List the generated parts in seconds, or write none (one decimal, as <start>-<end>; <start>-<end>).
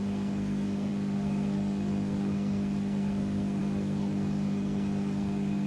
0.0-5.7